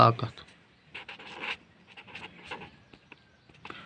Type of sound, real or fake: real